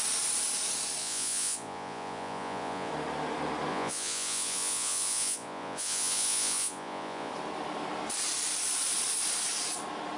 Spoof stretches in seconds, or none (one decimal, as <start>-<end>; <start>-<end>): 1.0-2.9; 3.7-7.3